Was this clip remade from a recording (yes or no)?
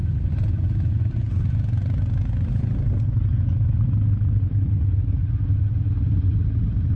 no